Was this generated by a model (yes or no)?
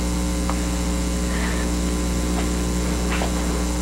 no